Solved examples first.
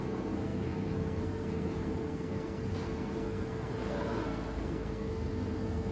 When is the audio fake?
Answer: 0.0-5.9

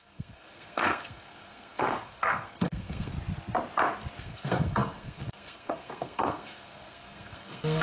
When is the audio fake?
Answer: 0.0-3.1; 4.2-7.8

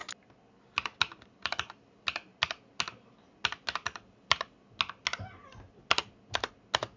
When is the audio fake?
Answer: none

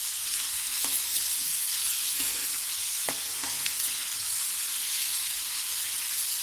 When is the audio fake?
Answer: 0.0-6.4

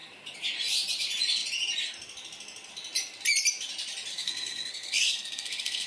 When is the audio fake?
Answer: 4.1-5.9